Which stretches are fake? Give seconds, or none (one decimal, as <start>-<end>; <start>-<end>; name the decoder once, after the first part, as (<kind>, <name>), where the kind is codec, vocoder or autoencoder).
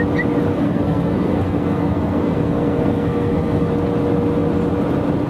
0.5-3.7 (codec, SNAC)